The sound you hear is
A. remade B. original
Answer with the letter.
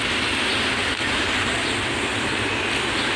B